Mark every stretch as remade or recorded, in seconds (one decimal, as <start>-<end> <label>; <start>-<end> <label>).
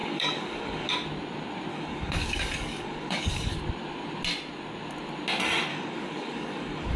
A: 0.0-0.9 remade; 0.9-1.7 recorded; 1.7-3.5 remade; 3.5-5.7 recorded; 5.7-7.0 remade